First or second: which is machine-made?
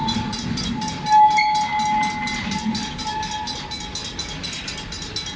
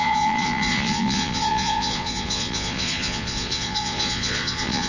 second